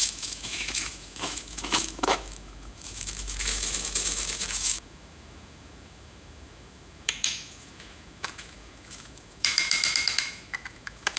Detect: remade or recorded remade